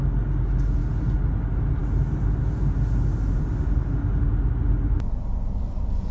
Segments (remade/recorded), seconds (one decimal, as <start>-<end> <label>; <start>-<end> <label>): 0.0-6.1 recorded